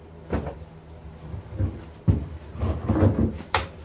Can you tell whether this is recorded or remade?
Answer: recorded